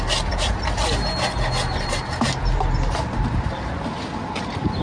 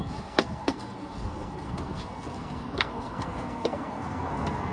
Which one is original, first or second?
first